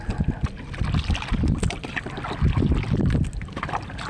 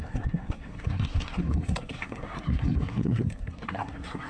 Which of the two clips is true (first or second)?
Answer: first